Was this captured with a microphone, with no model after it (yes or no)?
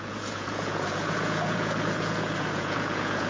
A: no